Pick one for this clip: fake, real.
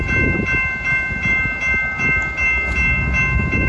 real